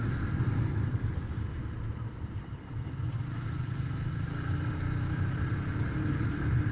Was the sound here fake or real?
real